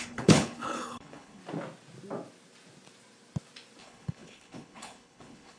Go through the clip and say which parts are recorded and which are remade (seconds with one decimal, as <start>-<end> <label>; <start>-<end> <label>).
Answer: 0.0-1.4 remade; 1.4-3.8 recorded; 3.8-5.6 remade